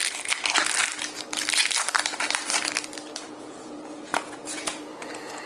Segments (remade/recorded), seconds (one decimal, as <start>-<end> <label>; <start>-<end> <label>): 0.0-3.3 recorded; 3.3-5.5 remade